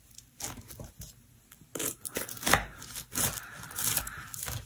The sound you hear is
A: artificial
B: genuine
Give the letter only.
B